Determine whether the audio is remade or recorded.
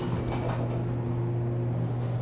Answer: recorded